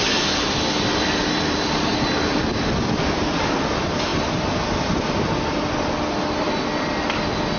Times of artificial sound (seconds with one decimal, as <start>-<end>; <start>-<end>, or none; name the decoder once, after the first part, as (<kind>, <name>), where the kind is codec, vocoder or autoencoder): 4.1-5.6 (vocoder, BigVGAN v2)